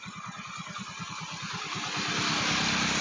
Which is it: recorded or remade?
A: recorded